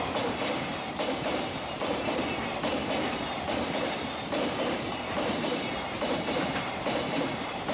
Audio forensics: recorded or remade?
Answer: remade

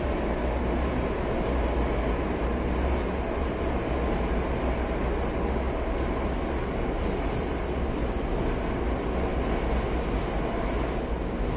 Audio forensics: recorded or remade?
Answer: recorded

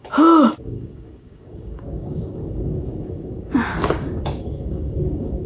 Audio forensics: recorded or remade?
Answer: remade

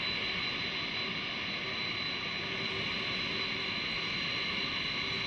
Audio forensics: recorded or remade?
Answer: recorded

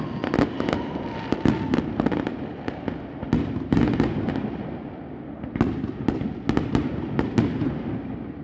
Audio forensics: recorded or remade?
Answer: recorded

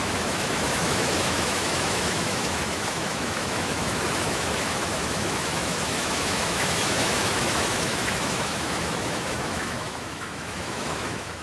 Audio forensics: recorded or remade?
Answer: remade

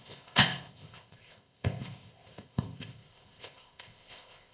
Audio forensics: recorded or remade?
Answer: remade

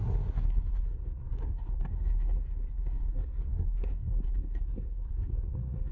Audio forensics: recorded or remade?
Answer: remade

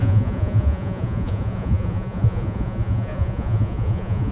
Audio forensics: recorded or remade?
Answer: remade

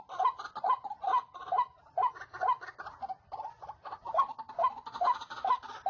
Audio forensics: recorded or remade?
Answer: recorded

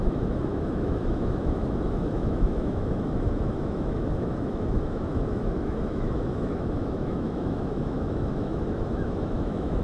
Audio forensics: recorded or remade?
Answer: remade